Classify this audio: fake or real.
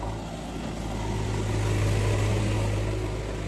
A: real